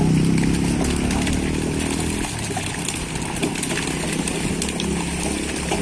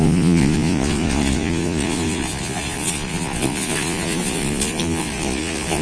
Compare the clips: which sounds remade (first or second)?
second